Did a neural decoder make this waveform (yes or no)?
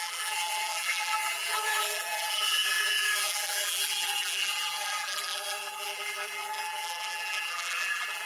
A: yes